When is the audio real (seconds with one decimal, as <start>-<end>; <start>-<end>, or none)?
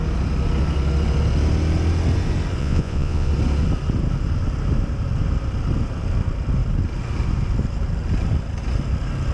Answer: 0.0-2.6; 3.3-9.3